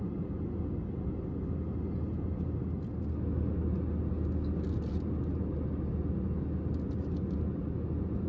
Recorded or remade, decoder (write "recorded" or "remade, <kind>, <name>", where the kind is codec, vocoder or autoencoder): recorded